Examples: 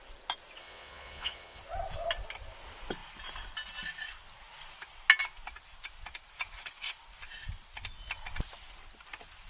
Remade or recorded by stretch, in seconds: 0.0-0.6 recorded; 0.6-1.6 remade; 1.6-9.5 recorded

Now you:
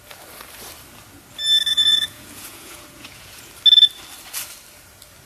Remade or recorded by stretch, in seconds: 0.0-1.7 recorded; 1.7-3.5 remade; 3.5-5.3 recorded

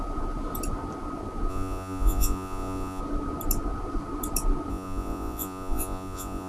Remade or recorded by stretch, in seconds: 0.0-1.5 recorded; 1.5-3.0 remade; 3.0-4.7 recorded; 4.7-6.5 remade

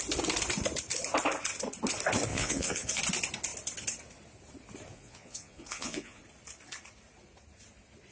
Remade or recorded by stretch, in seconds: 0.0-2.3 recorded; 2.3-3.0 remade; 3.0-4.9 recorded; 4.9-6.2 remade; 6.2-8.1 recorded